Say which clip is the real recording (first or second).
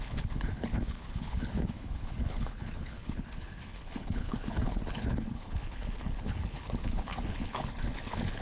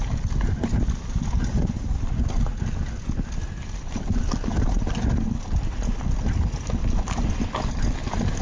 second